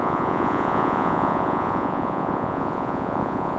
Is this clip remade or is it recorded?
remade